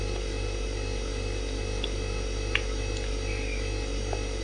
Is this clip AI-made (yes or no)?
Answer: no